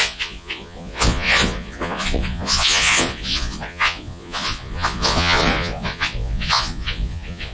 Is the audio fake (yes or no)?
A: yes